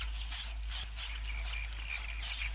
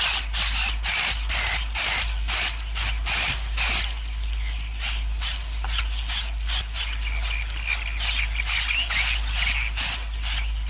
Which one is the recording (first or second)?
second